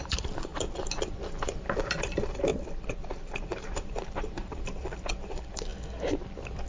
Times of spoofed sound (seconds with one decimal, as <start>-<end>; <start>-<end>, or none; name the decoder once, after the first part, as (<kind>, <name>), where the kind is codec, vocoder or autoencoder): 0.0-0.5 (vocoder, BigVGAN v2); 1.4-2.5; 3.4-5.7